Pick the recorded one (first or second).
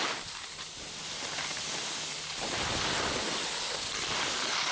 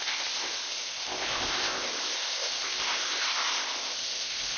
first